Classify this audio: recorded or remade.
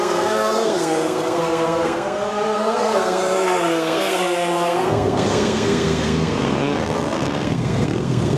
remade